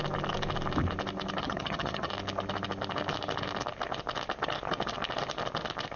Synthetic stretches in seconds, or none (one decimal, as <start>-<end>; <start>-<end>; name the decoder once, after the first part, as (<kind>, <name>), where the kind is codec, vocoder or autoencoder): 1.4-2.1 (vocoder, HiFi-GAN)